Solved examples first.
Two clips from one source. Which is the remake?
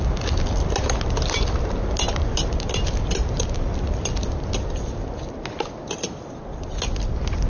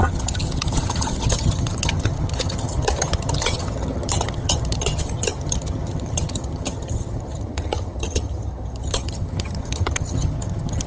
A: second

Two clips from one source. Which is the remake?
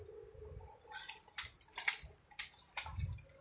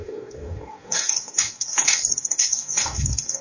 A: second